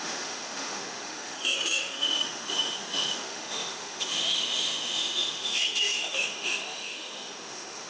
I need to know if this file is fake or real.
fake